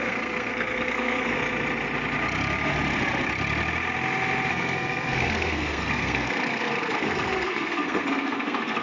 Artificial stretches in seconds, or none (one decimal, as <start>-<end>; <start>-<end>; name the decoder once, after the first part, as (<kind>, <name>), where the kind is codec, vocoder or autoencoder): 0.0-1.4 (codec, SNAC); 4.5-8.8